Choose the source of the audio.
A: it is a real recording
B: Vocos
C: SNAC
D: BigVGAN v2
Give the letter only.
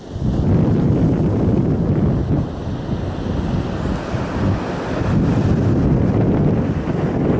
A